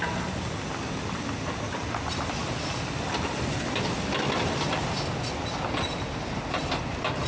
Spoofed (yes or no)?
no